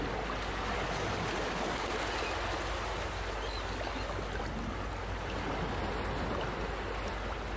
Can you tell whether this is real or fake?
real